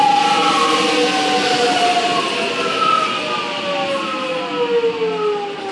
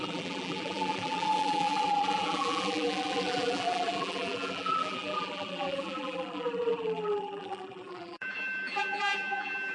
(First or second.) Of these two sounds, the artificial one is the second